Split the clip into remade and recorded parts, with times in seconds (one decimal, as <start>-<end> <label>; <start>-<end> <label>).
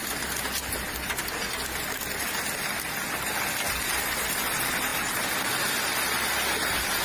0.0-7.0 recorded